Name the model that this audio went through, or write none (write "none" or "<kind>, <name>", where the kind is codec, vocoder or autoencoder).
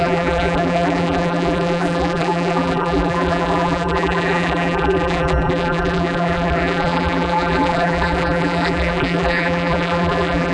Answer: vocoder, BigVGAN v2